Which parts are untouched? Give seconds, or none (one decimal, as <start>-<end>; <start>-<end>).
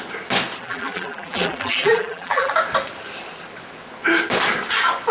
0.0-0.6; 2.5-5.1